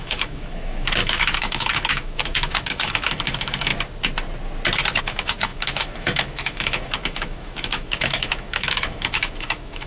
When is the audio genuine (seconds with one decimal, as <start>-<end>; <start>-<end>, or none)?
3.7-5.0